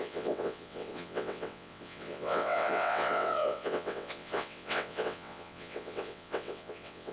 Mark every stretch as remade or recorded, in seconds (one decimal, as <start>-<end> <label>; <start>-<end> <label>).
0.0-7.1 remade